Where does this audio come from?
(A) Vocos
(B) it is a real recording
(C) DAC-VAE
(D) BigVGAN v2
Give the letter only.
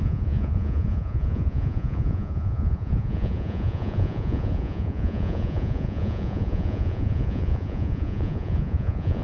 A